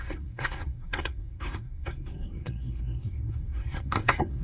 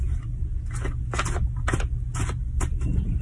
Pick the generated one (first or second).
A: first